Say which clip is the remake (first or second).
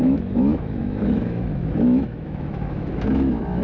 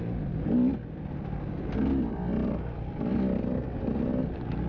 first